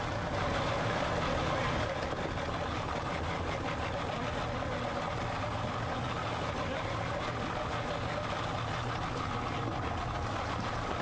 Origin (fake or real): real